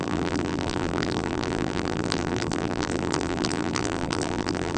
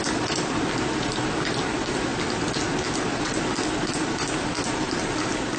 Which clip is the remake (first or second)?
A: first